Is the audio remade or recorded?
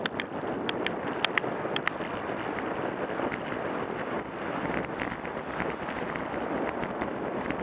recorded